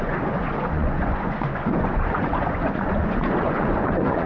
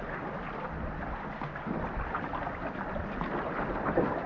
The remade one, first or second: first